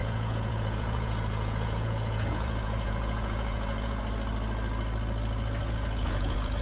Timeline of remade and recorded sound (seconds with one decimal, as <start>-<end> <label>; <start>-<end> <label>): 0.0-4.0 remade; 4.0-5.6 recorded; 5.6-6.6 remade